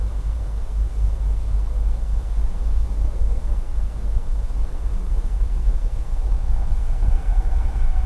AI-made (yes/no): yes